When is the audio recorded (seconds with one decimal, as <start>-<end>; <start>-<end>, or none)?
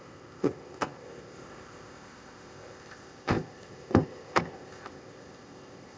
none